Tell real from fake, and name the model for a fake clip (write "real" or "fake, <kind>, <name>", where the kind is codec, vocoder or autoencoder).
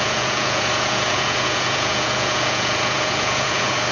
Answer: fake, vocoder, Vocos